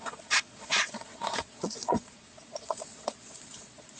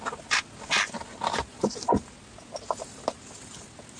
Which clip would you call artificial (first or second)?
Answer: first